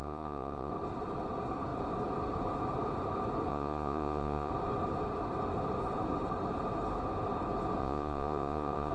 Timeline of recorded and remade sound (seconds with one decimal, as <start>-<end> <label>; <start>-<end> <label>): 0.0-0.7 remade; 0.7-3.5 recorded; 3.5-4.5 remade; 4.5-7.8 recorded; 7.8-8.9 remade